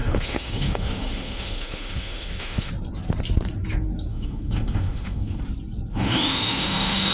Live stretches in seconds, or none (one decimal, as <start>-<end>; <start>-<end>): 2.7-4.1; 5.4-5.9

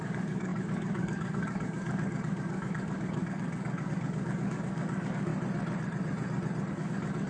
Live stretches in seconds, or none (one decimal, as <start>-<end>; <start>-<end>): 5.3-6.7